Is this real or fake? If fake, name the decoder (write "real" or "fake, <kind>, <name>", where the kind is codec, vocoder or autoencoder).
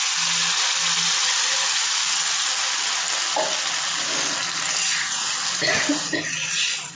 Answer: real